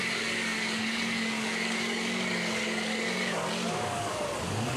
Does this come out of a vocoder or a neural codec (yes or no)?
yes